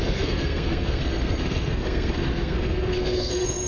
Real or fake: fake